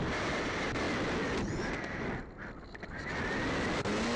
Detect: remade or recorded recorded